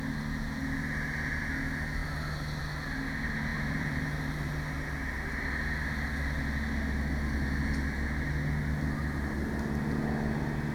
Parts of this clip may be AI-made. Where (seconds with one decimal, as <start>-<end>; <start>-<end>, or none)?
3.5-4.5

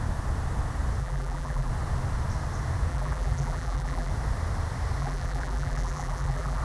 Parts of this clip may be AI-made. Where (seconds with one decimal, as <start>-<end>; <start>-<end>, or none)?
1.0-1.7; 2.9-4.1; 5.0-6.6

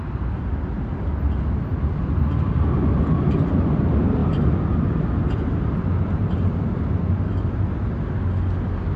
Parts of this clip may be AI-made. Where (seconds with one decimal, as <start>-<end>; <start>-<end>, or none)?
4.2-4.9

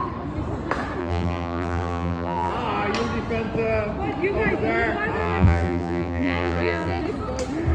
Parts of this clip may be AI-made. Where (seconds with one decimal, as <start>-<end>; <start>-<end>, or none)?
1.0-2.5; 5.2-7.0

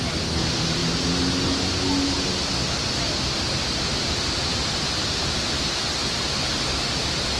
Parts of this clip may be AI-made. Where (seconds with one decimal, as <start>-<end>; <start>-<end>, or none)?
none

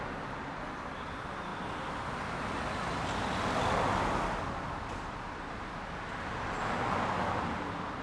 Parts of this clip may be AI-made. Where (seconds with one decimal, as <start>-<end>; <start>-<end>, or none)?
none

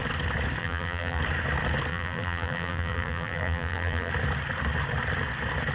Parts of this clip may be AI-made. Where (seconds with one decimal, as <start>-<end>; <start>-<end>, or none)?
0.6-1.2; 1.9-4.1

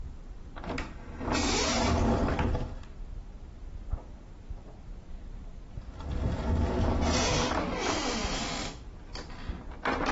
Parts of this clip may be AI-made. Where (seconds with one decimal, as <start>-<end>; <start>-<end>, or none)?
1.7-6.3; 8.2-10.1